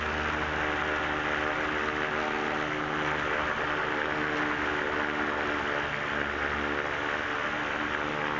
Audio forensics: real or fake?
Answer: real